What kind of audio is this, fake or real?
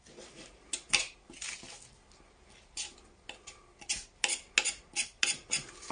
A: real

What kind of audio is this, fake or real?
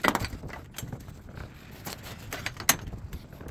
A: real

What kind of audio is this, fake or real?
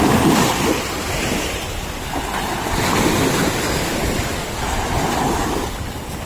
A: real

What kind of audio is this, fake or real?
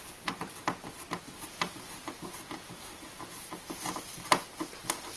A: real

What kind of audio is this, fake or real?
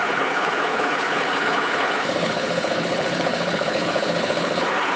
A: fake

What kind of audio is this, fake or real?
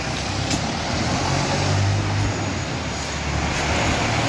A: real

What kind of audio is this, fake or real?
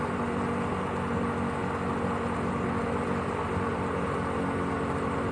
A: real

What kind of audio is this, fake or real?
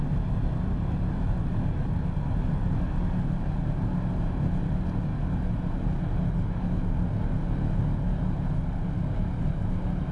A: real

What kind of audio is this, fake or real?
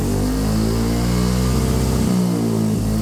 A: real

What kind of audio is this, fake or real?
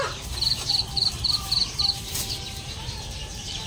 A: fake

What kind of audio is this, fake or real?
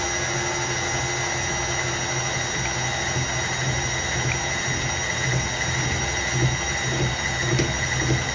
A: real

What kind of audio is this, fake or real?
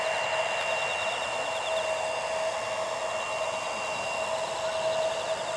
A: real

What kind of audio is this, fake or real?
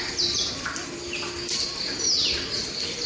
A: fake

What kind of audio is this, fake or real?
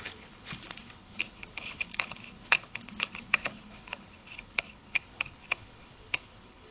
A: fake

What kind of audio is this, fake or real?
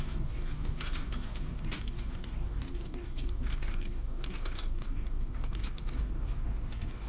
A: fake